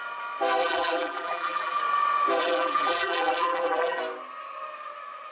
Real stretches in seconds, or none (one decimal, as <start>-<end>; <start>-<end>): 0.0-0.6; 1.8-2.4; 4.0-5.3